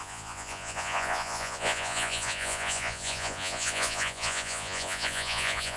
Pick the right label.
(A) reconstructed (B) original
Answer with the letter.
A